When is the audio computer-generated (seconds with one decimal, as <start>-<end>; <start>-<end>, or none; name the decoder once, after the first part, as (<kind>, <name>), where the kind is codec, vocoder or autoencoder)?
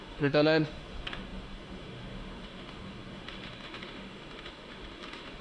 0.0-5.4 (autoencoder, DAC-VAE)